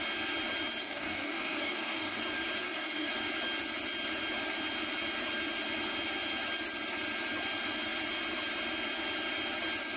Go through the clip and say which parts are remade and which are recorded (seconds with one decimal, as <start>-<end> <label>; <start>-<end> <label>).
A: 0.0-0.8 recorded; 0.8-2.2 remade; 2.2-2.6 recorded; 2.6-3.1 remade; 3.1-10.0 recorded